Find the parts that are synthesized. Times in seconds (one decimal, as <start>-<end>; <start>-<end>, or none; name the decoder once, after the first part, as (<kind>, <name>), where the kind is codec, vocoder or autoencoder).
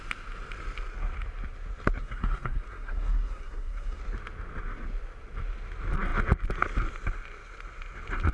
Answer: 2.0-4.0 (codec, SNAC)